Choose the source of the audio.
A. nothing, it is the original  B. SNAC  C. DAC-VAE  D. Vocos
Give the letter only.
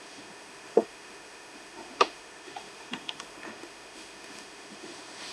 C